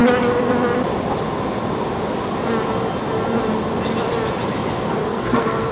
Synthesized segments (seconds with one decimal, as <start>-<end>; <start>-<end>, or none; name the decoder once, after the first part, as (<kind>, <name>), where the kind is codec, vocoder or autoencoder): 5.0-5.7 (codec, SNAC)